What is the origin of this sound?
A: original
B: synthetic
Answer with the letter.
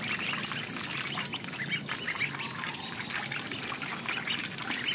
A